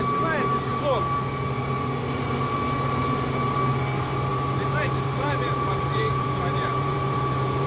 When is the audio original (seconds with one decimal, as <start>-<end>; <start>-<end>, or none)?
0.0-4.3